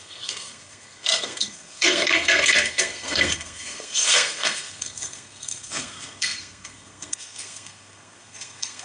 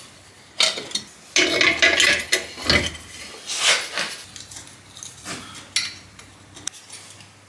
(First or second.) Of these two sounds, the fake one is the first